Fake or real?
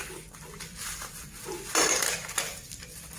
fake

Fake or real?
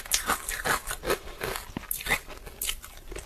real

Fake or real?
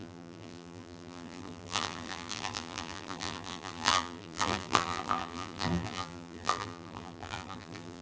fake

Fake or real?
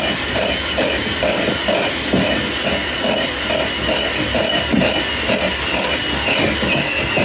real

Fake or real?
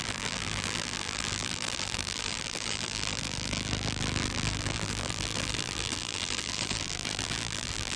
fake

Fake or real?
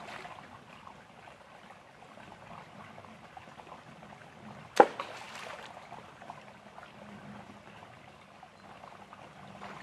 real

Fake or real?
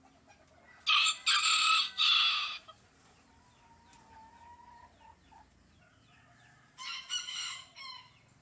real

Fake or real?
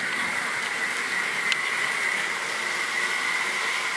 real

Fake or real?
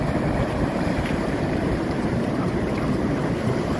fake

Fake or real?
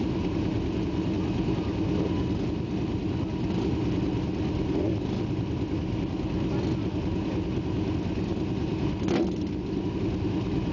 real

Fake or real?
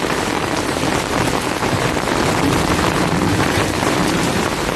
fake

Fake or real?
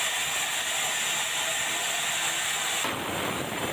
real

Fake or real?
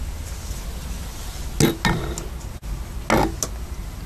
real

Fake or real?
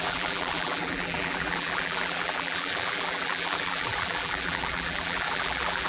fake